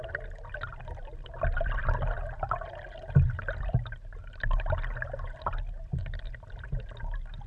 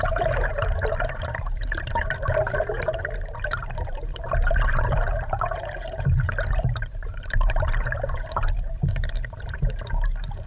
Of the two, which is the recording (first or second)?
first